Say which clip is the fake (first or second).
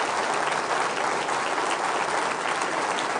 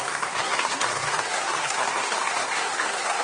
second